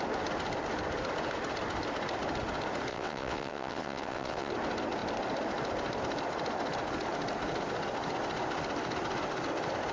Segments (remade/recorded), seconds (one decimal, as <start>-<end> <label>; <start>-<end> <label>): 0.0-2.9 recorded; 2.9-4.5 remade; 4.5-9.9 recorded